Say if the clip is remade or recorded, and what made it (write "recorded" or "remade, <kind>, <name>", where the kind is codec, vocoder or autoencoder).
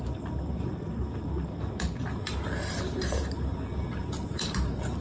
recorded